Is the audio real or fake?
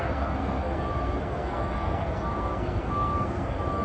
fake